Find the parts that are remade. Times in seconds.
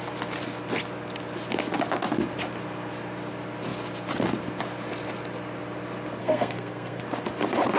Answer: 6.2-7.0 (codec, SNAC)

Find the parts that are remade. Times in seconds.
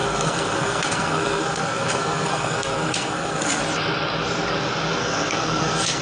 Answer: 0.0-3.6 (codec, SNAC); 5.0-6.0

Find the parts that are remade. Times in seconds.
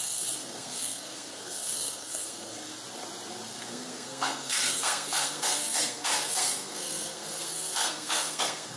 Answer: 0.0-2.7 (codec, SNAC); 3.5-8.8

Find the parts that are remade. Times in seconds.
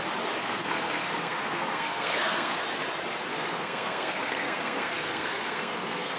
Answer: 0.4-2.6 (codec, SNAC); 3.3-6.2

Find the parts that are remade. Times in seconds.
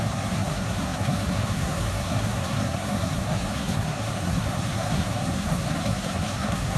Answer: 0.0-6.8 (codec, SNAC)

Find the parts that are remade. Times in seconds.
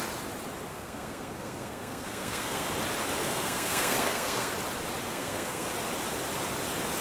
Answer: 0.7-2.7 (codec, SNAC); 3.2-4.5; 5.1-5.7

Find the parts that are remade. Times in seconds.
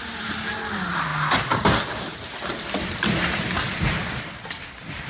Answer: none